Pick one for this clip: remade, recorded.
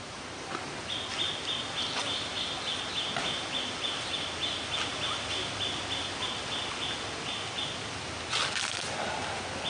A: recorded